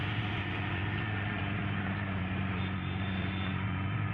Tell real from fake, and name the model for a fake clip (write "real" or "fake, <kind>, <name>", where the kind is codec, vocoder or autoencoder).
fake, vocoder, Vocos